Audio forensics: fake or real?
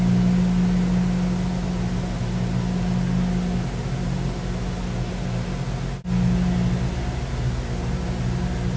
real